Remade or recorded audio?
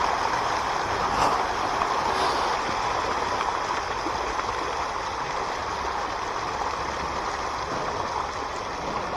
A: recorded